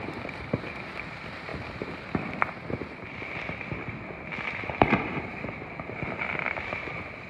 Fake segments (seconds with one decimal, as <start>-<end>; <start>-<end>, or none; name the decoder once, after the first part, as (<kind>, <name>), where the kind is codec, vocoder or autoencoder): 0.0-1.5 (vocoder, BigVGAN v2); 3.3-7.3